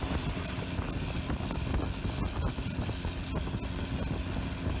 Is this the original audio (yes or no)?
yes